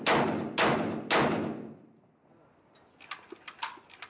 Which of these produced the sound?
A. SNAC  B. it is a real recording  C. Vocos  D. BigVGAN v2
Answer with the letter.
B